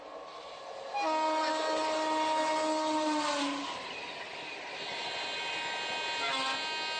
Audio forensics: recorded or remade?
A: recorded